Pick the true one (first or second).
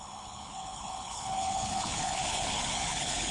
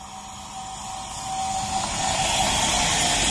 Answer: second